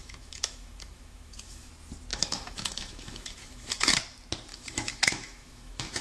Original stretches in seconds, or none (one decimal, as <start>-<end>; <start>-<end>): 1.7-2.1; 3.9-4.5